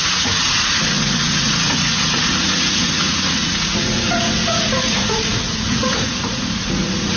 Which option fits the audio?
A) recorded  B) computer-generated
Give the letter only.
B